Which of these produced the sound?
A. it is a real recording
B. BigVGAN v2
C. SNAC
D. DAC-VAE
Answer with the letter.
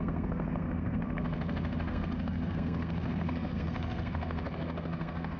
C